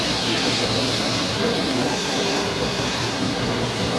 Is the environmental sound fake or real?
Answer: fake